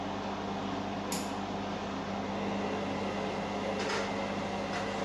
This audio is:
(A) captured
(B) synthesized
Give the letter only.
A